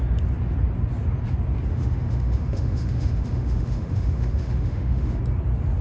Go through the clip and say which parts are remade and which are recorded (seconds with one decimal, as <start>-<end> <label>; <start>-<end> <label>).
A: 0.0-1.7 recorded; 1.7-5.2 remade; 5.2-5.8 recorded